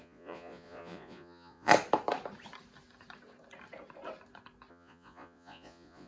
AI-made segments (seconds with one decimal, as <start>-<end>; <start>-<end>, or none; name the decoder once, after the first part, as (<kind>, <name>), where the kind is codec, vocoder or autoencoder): 0.0-1.7 (vocoder, Vocos); 4.7-6.1